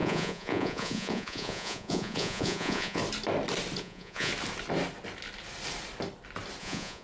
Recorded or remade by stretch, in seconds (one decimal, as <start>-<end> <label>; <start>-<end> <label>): 0.0-3.0 remade; 3.0-3.8 recorded; 3.8-4.3 remade; 4.3-6.6 recorded; 6.6-7.0 remade